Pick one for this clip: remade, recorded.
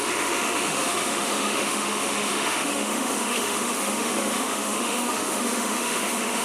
remade